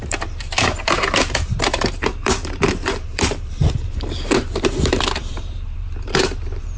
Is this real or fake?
fake